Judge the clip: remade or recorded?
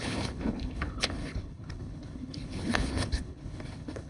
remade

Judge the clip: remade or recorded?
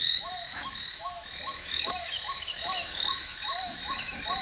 remade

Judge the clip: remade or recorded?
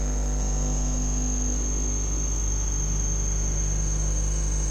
remade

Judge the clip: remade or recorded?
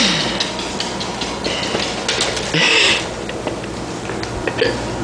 recorded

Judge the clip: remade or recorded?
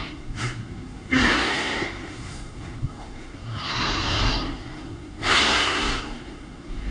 remade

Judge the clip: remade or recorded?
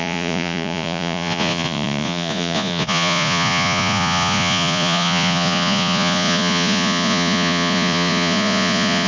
remade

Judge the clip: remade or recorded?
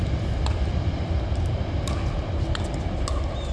recorded